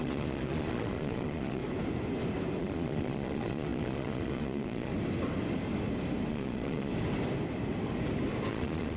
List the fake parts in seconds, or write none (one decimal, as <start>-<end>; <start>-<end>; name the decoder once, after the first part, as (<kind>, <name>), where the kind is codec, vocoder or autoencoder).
0.0-1.6 (vocoder, Vocos); 2.6-4.9; 6.3-6.9; 8.5-9.0